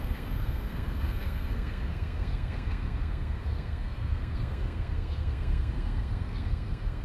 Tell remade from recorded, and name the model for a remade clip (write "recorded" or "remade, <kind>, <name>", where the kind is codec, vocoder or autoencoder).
remade, codec, SNAC